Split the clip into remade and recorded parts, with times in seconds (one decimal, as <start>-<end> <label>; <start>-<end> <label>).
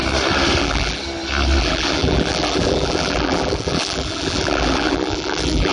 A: 0.0-0.6 recorded; 0.6-1.0 remade; 1.0-1.6 recorded; 1.6-5.7 remade